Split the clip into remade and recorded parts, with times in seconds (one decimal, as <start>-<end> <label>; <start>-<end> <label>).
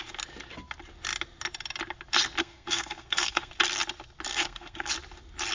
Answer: 0.0-2.4 recorded; 2.4-3.5 remade; 3.5-4.3 recorded; 4.3-4.9 remade; 4.9-5.5 recorded